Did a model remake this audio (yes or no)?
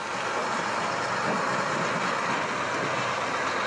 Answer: no